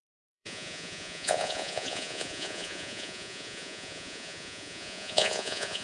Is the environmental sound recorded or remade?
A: remade